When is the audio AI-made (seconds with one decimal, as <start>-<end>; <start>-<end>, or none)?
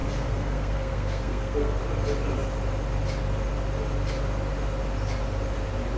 0.0-1.8